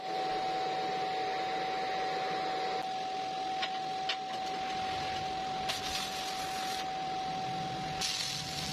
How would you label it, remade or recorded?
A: recorded